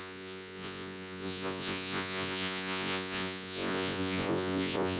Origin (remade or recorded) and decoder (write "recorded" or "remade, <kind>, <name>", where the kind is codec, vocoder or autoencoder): remade, vocoder, Vocos